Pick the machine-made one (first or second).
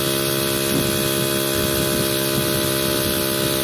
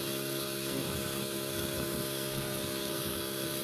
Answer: second